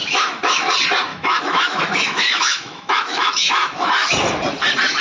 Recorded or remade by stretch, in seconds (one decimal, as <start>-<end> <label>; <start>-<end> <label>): 0.0-0.7 remade; 0.7-1.1 recorded; 1.1-4.1 remade; 4.1-5.0 recorded